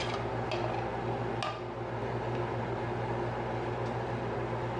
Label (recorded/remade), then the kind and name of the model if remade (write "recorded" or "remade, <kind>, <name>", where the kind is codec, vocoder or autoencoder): recorded